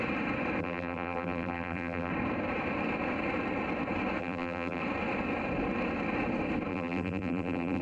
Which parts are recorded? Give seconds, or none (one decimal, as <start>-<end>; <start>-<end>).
0.0-0.6; 2.1-4.2; 4.8-6.7